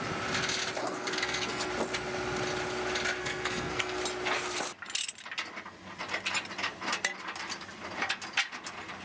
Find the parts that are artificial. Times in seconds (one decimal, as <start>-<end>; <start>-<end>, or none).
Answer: 0.8-1.7; 3.2-4.0